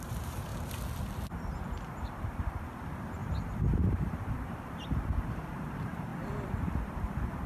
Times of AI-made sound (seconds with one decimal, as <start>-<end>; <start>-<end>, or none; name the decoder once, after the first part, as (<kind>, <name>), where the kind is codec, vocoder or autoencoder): 0.0-0.5 (vocoder, BigVGAN v2); 1.9-3.2; 3.7-6.1; 6.8-7.5